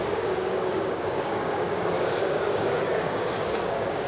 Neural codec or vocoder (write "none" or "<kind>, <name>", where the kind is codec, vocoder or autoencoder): codec, DAC